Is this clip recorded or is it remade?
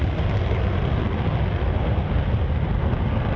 recorded